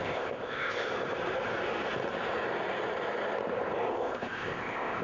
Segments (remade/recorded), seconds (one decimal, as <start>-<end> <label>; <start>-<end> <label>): 0.0-0.9 remade; 0.9-3.9 recorded; 3.9-5.0 remade